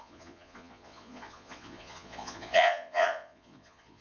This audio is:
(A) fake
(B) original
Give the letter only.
A